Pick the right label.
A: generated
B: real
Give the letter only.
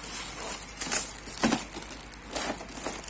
B